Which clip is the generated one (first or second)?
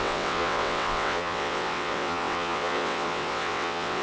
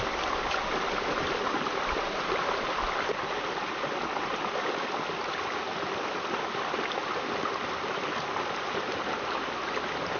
first